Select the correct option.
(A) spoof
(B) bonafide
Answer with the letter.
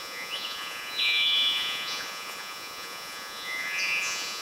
A